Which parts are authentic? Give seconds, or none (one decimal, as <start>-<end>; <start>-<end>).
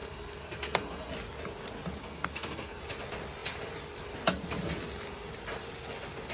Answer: 1.1-2.0; 2.8-6.3